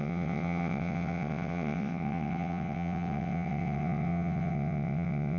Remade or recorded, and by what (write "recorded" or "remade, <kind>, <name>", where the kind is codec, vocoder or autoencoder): remade, vocoder, WaveNeXt